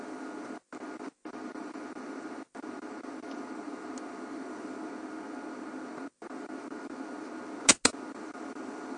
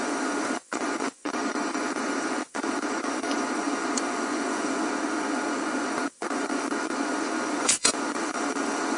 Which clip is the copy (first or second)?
second